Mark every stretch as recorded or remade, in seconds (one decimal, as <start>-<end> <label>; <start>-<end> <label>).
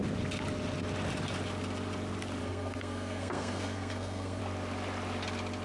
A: 0.0-2.4 recorded; 2.4-4.4 remade; 4.4-5.6 recorded